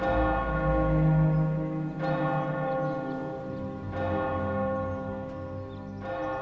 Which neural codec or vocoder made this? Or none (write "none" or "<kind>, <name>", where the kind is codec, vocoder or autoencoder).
none